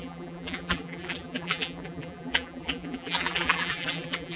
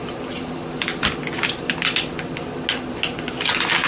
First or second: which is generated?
first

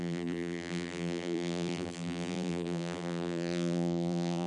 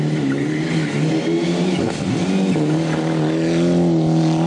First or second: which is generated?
first